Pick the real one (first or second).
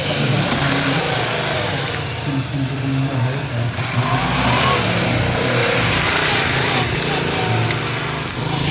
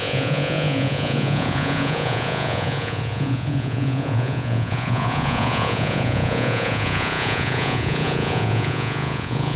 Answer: first